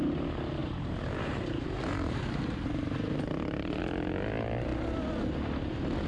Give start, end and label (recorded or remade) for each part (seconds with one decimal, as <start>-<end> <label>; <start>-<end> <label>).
0.0-0.6 recorded; 0.6-3.8 remade; 3.8-6.1 recorded